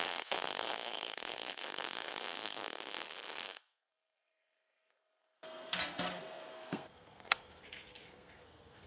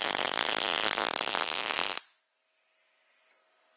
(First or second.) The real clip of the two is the second